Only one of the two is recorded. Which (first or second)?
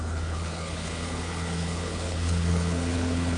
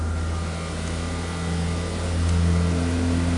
second